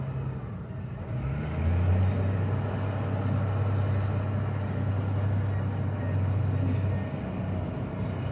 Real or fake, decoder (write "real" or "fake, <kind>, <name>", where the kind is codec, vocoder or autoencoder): real